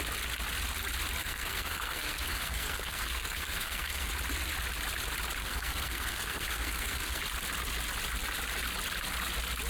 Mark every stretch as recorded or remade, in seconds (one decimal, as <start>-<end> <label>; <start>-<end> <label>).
0.0-1.2 recorded; 1.2-4.1 remade; 4.1-5.4 recorded; 5.4-7.2 remade; 7.2-9.7 recorded